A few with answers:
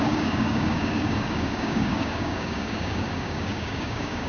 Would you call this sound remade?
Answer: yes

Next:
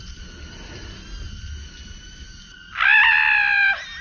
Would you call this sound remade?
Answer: no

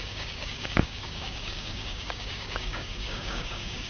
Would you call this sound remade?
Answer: yes